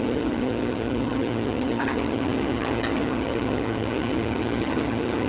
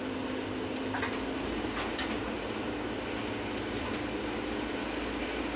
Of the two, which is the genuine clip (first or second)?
second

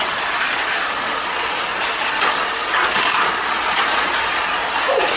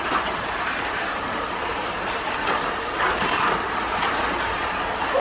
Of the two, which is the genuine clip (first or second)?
first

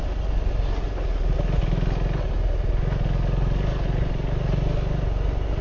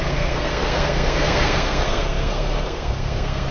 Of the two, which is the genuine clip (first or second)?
first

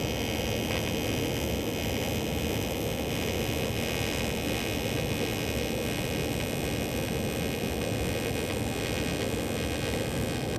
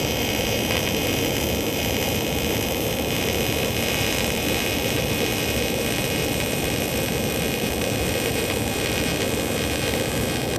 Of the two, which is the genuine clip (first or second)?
first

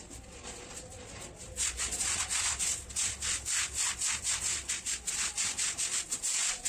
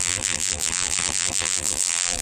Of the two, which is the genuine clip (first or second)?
first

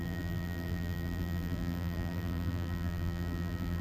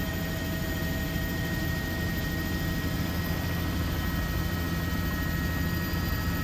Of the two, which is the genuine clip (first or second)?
second